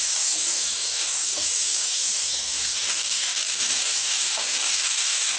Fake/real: fake